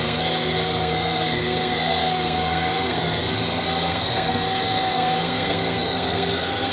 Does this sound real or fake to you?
fake